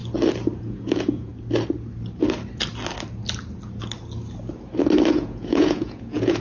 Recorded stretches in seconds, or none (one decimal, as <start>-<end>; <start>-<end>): 0.0-0.6; 1.3-5.1